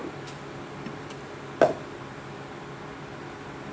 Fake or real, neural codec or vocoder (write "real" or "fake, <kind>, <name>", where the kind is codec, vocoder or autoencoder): real